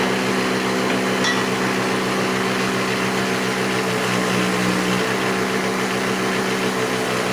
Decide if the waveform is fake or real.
real